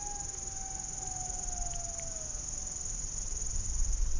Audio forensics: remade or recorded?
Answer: recorded